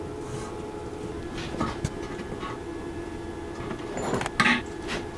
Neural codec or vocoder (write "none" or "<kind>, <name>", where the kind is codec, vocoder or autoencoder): none